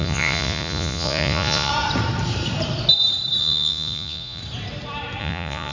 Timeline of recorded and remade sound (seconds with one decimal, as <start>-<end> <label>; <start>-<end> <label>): 0.0-1.7 remade; 1.7-3.4 recorded; 3.4-4.4 remade; 4.4-5.2 recorded; 5.2-5.7 remade